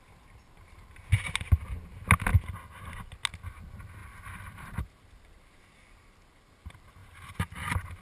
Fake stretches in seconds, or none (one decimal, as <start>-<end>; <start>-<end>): 4.0-5.5; 7.0-7.6

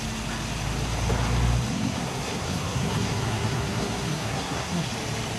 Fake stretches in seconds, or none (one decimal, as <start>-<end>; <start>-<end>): 1.7-4.9